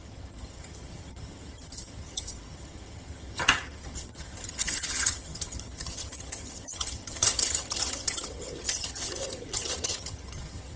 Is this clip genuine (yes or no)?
no